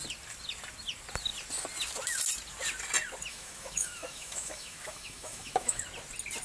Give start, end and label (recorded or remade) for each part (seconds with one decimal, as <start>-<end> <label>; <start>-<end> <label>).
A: 0.0-3.3 recorded; 3.3-5.8 remade; 5.8-6.4 recorded